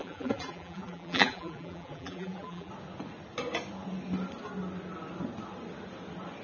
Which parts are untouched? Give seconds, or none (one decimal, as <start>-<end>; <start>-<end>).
2.7-6.4